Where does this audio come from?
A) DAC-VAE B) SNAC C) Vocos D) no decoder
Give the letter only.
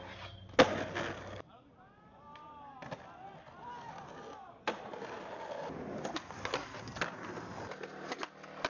D